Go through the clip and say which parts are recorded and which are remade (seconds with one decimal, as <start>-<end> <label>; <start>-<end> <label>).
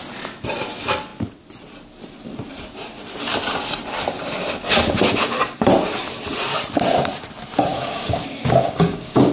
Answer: 0.0-7.7 recorded; 7.7-9.3 remade